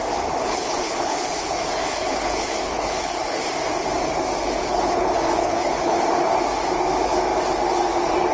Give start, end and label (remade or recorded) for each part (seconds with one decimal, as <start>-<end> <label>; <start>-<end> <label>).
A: 0.0-0.4 recorded; 0.4-3.4 remade; 3.4-4.6 recorded; 4.6-6.0 remade; 6.0-8.3 recorded